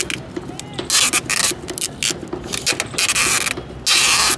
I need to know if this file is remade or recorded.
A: recorded